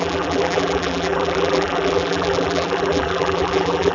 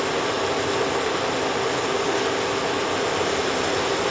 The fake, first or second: first